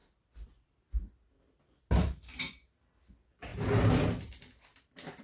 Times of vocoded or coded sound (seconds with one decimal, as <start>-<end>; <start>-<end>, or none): none